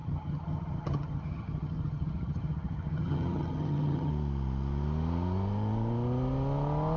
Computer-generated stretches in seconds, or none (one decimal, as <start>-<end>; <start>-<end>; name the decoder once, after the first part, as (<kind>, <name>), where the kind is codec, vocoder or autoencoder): 0.0-4.1 (vocoder, HiFi-GAN)